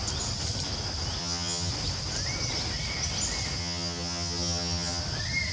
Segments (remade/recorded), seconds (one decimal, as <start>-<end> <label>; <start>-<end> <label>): 0.0-1.2 recorded; 1.2-1.7 remade; 1.7-3.6 recorded; 3.6-5.0 remade; 5.0-5.5 recorded